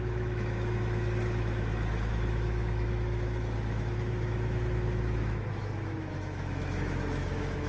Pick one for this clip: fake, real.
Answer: fake